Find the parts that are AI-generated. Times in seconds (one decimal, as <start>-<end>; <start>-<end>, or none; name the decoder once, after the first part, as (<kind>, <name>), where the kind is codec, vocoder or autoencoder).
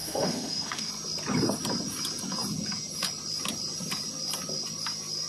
0.0-0.9 (autoencoder, DAC-VAE)